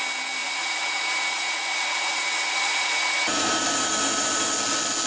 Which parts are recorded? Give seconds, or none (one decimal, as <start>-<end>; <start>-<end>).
0.0-0.4; 3.5-5.1